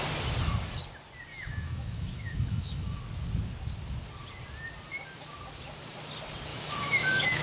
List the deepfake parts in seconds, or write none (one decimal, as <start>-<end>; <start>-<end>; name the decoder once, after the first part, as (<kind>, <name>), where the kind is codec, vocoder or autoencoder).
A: 1.3-3.0 (autoencoder, DAC-VAE); 6.5-7.4